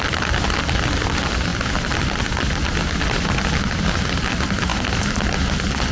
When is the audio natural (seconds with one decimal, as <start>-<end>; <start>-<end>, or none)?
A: 0.0-5.9